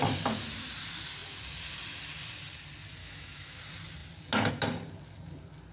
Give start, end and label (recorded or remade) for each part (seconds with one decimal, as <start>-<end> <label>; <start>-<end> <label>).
0.0-3.0 recorded; 3.0-3.6 remade; 3.6-5.7 recorded

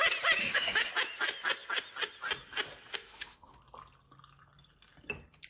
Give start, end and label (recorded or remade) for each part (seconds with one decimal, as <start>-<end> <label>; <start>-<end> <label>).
0.0-0.4 recorded; 0.4-0.9 remade; 0.9-2.9 recorded; 2.9-3.5 remade; 3.5-5.5 recorded

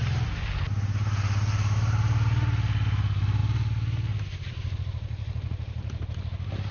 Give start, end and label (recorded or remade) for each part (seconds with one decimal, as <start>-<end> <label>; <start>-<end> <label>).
0.0-6.7 recorded

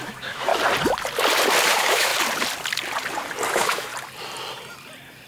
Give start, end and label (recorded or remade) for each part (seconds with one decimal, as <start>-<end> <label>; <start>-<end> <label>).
0.0-0.5 remade; 0.5-1.7 recorded; 1.7-2.1 remade; 2.1-3.5 recorded; 3.5-3.9 remade; 3.9-5.3 recorded

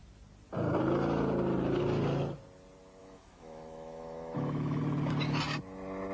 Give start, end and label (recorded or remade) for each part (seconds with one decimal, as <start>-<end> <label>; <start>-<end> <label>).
0.0-3.0 recorded; 3.0-4.8 remade; 4.8-6.1 recorded

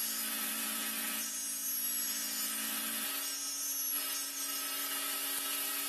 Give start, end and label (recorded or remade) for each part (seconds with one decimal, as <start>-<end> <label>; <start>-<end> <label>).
0.0-5.9 recorded